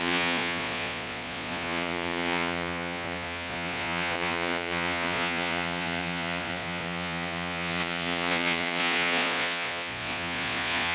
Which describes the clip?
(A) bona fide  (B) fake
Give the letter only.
B